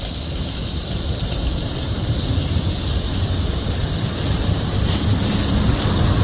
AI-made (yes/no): no